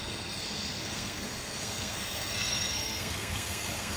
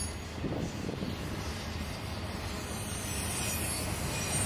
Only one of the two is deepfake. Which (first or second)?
first